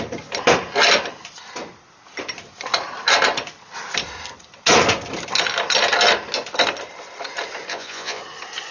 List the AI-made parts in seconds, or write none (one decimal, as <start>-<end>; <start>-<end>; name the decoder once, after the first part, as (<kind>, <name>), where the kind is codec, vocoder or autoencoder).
7.7-8.2 (vocoder, Vocos)